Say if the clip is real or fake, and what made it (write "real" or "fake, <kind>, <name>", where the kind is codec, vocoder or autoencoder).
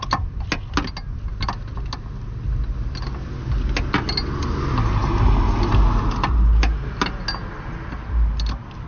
real